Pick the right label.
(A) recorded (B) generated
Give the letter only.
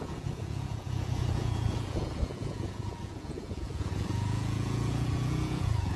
B